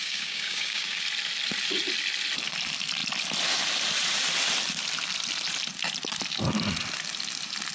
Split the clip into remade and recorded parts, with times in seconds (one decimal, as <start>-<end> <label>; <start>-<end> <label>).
0.0-1.0 remade; 1.0-7.7 recorded